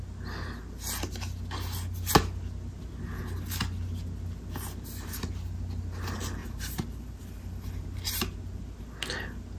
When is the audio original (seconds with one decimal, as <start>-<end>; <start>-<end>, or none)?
0.0-6.4; 7.2-9.6